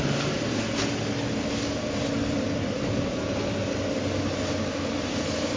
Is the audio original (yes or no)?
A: yes